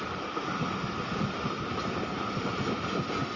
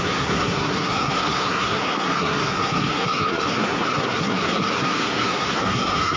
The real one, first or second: first